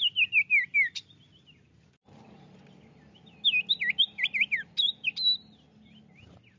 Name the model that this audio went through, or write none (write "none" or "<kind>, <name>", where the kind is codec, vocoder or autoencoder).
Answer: none